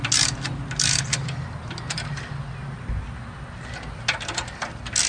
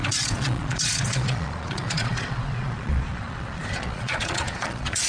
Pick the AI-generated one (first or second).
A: second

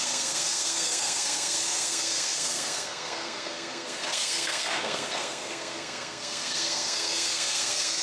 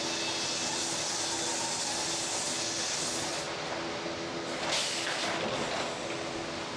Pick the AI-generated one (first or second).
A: first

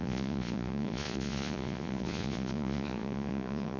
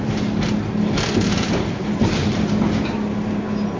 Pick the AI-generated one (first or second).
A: first